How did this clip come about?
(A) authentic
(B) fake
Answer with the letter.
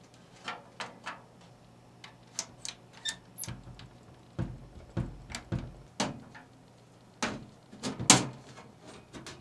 A